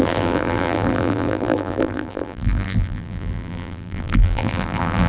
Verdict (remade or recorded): remade